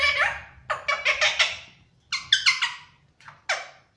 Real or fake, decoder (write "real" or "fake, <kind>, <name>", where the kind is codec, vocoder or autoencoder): real